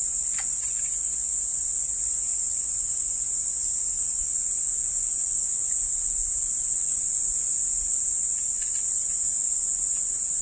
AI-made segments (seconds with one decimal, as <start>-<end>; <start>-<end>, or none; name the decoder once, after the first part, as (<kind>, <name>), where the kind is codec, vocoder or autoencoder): none

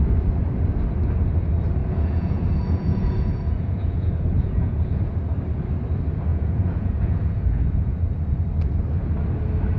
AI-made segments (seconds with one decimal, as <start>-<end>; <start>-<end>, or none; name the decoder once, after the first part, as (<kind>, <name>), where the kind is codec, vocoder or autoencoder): 1.8-5.1 (vocoder, Vocos); 6.3-8.0

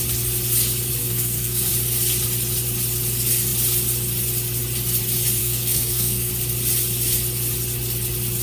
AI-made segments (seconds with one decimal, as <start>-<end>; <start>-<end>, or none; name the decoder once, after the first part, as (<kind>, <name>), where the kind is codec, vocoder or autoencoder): 1.0-1.7 (codec, SNAC); 5.4-6.3

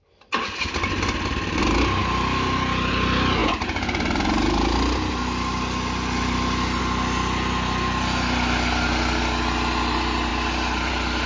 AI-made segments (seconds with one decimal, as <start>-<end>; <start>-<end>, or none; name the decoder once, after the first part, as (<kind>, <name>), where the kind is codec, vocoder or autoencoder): none

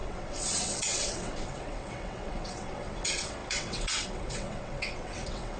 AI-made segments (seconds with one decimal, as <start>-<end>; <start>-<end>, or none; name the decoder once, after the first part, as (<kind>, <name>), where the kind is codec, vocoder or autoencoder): 0.0-5.6 (vocoder, WaveNeXt)

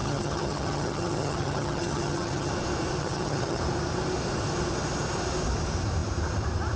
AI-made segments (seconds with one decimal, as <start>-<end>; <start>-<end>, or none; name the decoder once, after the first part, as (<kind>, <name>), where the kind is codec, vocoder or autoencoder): 0.0-2.5 (vocoder, HiFi-GAN); 3.0-3.6